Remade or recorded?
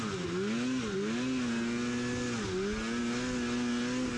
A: recorded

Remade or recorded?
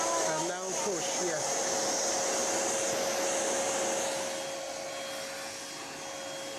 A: recorded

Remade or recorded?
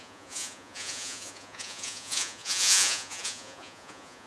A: remade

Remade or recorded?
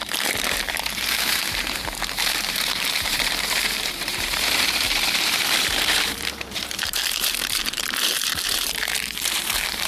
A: remade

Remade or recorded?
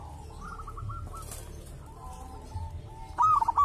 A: recorded